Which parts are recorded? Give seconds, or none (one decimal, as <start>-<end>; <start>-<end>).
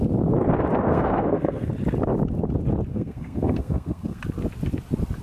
0.0-0.7; 1.7-2.9; 4.2-5.2